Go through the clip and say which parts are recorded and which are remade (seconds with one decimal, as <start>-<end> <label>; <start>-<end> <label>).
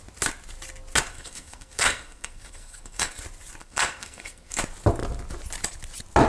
0.0-1.1 recorded; 1.1-3.2 remade; 3.2-3.6 recorded; 3.6-4.6 remade; 4.6-6.3 recorded